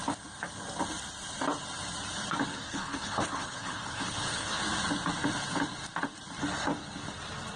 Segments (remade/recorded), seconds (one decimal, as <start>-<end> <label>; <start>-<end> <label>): 0.0-2.5 recorded; 2.5-4.6 remade; 4.6-7.6 recorded

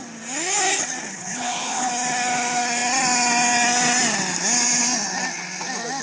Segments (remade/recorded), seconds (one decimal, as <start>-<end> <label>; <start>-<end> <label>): 0.0-1.1 recorded; 1.1-1.9 remade; 1.9-6.0 recorded

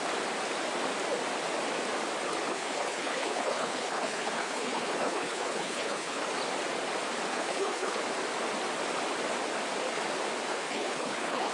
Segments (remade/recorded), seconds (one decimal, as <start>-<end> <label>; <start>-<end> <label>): 0.0-2.5 recorded; 2.5-6.2 remade; 6.2-7.3 recorded; 7.3-8.0 remade; 8.0-10.5 recorded; 10.5-11.5 remade

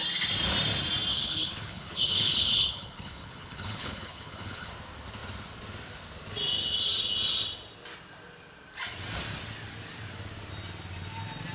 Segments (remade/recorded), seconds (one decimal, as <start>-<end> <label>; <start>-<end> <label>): 0.0-1.1 recorded; 1.1-4.7 remade; 4.7-11.5 recorded

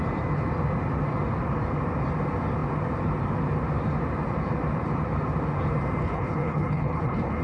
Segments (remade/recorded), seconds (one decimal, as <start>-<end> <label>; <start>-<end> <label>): 0.0-6.0 recorded; 6.0-7.4 remade

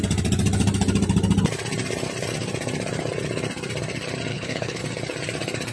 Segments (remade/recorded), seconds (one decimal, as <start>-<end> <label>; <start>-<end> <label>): 0.0-4.3 recorded; 4.3-4.8 remade; 4.8-5.7 recorded

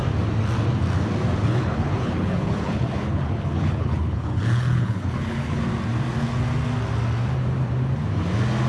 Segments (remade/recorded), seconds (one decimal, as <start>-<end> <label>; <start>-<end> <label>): 0.0-1.4 recorded; 1.4-5.6 remade; 5.6-8.7 recorded